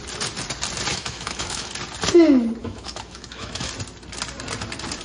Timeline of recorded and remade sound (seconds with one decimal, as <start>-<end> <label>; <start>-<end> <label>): 0.0-0.9 recorded; 0.9-1.7 remade; 1.7-2.6 recorded; 2.6-3.7 remade; 3.7-5.0 recorded